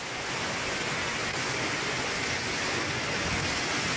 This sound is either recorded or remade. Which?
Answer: remade